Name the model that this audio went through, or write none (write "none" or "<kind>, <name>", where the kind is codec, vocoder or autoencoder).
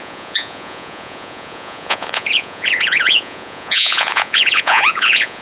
vocoder, Vocos